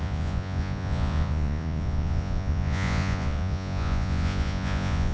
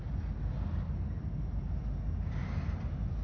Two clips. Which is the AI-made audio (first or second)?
first